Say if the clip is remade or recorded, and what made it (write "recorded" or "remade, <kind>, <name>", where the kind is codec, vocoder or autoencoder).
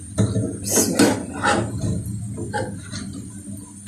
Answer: recorded